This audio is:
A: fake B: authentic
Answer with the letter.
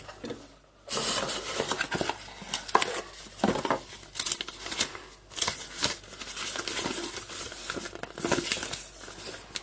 B